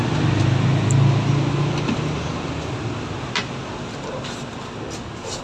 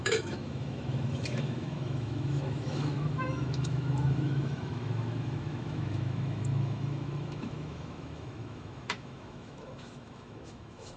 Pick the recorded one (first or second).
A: first